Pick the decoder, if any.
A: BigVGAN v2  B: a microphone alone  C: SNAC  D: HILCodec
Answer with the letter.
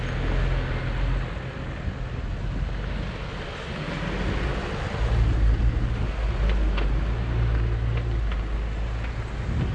B